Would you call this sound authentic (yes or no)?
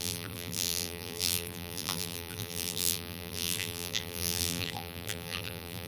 no